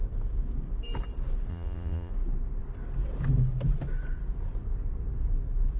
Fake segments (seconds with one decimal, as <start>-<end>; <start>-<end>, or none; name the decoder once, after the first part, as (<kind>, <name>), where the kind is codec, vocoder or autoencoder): 1.5-2.1 (vocoder, Vocos)